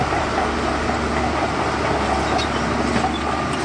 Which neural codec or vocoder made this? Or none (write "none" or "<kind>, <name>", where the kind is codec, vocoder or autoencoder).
none